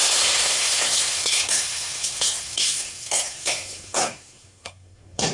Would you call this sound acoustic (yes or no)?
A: no